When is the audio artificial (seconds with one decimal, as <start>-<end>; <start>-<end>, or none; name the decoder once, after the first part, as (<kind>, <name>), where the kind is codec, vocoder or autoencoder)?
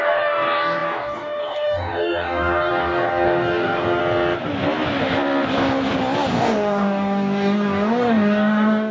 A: 0.0-4.0 (codec, DAC); 6.3-8.9